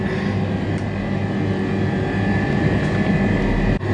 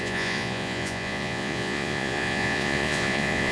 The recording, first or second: first